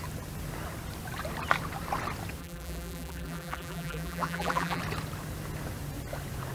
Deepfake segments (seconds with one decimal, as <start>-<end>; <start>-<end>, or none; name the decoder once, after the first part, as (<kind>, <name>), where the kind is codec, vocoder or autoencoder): 2.4-4.8 (vocoder, BigVGAN v2)